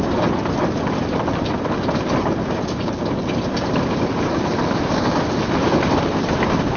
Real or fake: real